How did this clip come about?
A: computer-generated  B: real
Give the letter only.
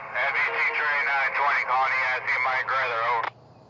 B